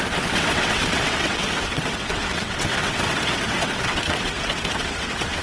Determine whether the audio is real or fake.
fake